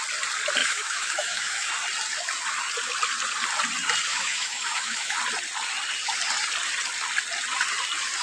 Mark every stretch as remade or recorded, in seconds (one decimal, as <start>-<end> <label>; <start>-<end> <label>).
0.0-0.6 recorded; 0.6-1.7 remade; 1.7-4.1 recorded; 4.1-5.2 remade; 5.2-8.2 recorded